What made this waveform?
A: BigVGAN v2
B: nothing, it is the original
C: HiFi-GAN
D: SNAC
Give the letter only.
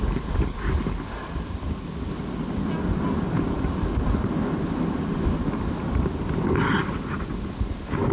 B